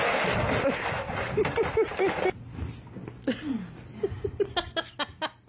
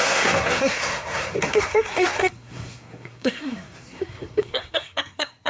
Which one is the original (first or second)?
first